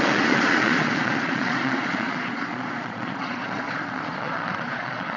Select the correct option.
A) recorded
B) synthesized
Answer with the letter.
B